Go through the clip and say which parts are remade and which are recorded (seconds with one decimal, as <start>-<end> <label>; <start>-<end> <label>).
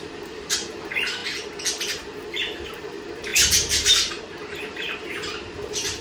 0.0-1.2 remade; 1.2-2.3 recorded; 2.3-3.3 remade; 3.3-4.1 recorded; 4.1-6.0 remade